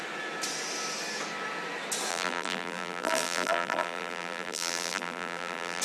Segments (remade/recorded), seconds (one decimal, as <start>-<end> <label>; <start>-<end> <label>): 0.0-2.1 recorded; 2.1-5.8 remade